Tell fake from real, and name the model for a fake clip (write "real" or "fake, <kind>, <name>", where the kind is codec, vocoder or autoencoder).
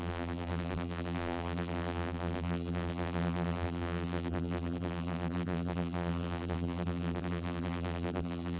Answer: fake, vocoder, BigVGAN v2